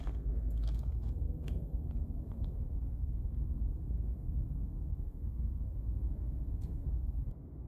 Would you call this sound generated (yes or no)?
yes